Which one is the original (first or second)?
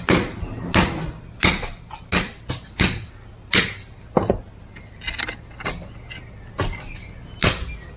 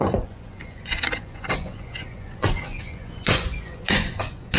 first